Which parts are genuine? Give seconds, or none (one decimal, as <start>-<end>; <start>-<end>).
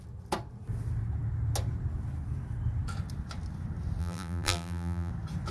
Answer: 0.0-4.0; 5.1-5.5